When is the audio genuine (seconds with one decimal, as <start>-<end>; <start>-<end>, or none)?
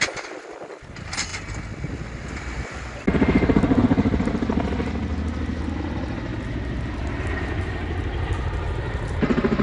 0.0-9.6